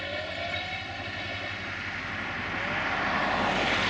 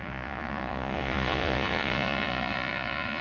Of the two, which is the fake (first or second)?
second